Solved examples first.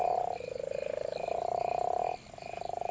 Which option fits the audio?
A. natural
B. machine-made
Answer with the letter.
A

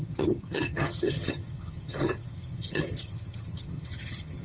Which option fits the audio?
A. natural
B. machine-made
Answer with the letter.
B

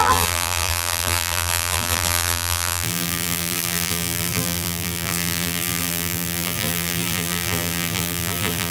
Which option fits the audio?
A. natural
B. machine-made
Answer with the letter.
B